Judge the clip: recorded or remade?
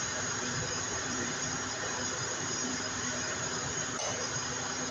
remade